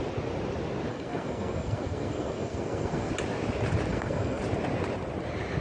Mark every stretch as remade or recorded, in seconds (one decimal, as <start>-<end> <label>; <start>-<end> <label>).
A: 0.0-0.9 recorded; 0.9-3.1 remade; 3.1-3.9 recorded; 3.9-4.4 remade; 4.4-5.6 recorded